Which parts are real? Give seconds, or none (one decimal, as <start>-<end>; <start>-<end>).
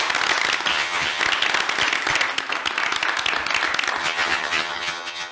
0.0-0.7; 1.2-4.0